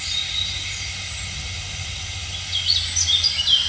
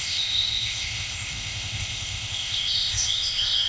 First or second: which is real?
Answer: first